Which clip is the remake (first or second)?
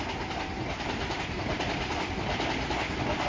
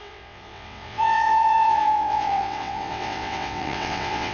second